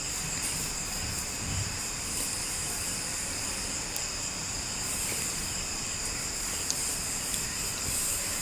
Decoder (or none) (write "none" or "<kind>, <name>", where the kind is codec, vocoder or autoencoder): vocoder, BigVGAN v2